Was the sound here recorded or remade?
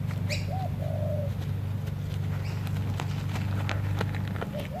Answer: recorded